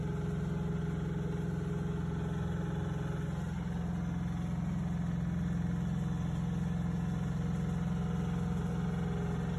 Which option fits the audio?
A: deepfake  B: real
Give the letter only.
B